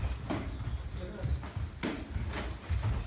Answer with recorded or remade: recorded